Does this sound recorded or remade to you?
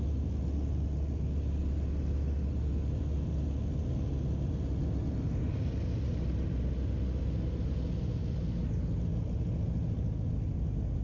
recorded